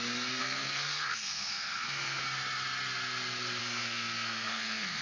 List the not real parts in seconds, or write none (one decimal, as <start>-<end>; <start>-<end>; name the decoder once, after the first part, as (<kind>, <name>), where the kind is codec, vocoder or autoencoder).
0.4-2.2 (codec, SNAC); 3.6-5.0